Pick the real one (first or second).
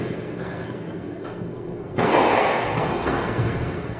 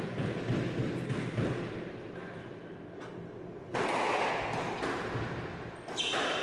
second